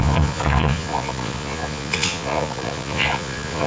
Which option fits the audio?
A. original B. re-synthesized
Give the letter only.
B